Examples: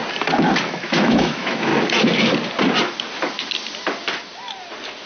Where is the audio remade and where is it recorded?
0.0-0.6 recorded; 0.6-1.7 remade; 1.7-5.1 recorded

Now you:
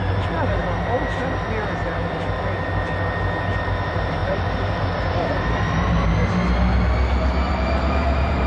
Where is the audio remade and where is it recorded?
0.0-0.6 remade; 0.6-3.4 recorded; 3.4-6.2 remade; 6.2-7.5 recorded; 7.5-8.5 remade

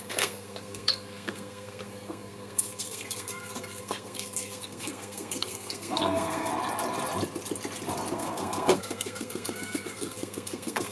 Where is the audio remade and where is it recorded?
0.0-6.5 remade; 6.5-8.1 recorded; 8.1-10.9 remade

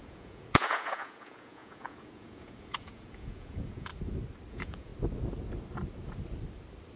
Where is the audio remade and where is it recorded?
0.0-3.9 remade; 3.9-4.5 recorded; 4.5-4.9 remade; 4.9-7.0 recorded